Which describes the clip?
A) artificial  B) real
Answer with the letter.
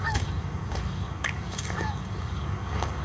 A